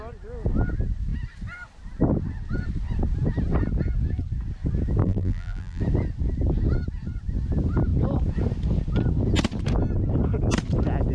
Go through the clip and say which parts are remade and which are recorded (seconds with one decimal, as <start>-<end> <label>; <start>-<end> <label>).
0.0-5.0 recorded; 5.0-5.8 remade; 5.8-11.1 recorded